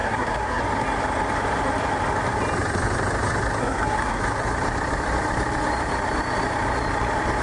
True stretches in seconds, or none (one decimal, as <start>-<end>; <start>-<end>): 0.6-3.6; 4.2-7.4

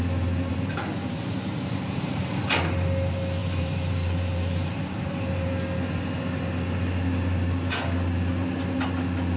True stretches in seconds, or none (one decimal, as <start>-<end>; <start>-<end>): 0.0-0.5; 2.4-3.4; 5.5-9.4

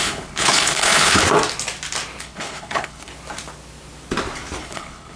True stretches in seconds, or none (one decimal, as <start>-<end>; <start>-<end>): 1.2-2.2; 3.1-4.6